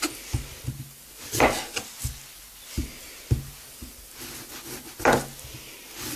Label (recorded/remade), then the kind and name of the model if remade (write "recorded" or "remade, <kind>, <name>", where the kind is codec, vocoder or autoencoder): recorded